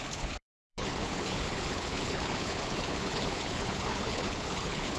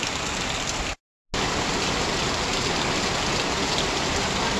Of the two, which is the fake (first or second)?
first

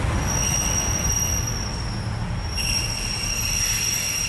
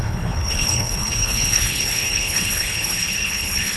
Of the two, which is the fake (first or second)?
second